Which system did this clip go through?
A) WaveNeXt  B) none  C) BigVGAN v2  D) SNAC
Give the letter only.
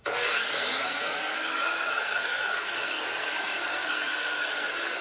D